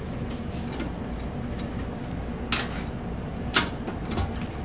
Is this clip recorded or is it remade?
recorded